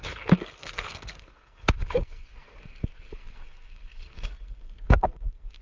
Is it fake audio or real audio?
fake